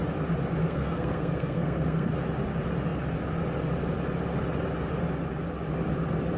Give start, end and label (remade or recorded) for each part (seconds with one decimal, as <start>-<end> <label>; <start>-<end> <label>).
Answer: 0.0-0.6 recorded; 0.6-2.1 remade; 2.1-6.4 recorded